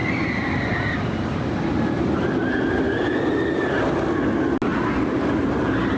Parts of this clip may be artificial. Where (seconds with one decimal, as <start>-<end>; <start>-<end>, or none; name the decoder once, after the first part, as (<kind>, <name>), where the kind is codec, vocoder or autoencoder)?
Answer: 0.0-3.6 (vocoder, BigVGAN v2); 4.7-5.5